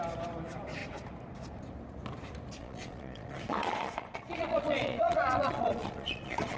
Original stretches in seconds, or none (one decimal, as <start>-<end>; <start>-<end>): 0.0-2.6